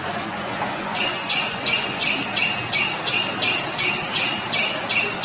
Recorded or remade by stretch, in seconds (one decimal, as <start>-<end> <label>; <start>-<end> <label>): 0.0-2.0 remade; 2.0-5.2 recorded